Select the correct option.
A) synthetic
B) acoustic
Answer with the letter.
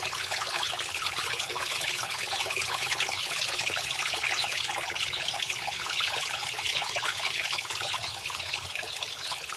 A